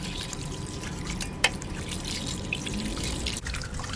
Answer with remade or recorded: remade